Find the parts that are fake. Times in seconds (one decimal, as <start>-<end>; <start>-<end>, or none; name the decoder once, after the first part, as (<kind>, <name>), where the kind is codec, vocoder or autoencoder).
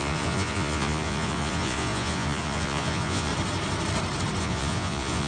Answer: 0.0-3.3 (vocoder, Vocos); 4.4-5.3